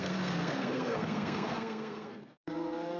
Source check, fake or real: fake